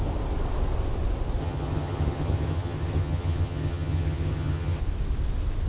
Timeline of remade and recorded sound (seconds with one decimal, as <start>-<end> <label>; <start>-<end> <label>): 0.0-1.4 recorded; 1.4-4.8 remade; 4.8-5.7 recorded